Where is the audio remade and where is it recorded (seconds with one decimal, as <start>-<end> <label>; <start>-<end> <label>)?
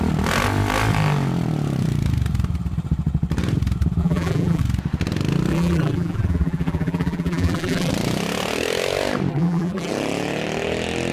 0.0-4.0 recorded; 4.0-4.6 remade; 4.6-5.5 recorded; 5.5-7.9 remade; 7.9-9.3 recorded; 9.3-9.9 remade; 9.9-11.1 recorded